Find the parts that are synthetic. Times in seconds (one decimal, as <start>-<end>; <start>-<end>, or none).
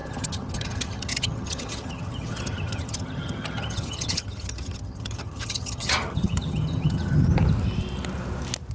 0.0-7.2